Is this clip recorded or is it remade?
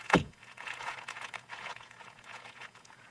remade